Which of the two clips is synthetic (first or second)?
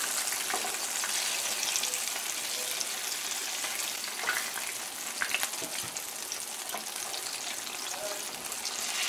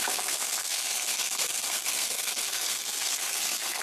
second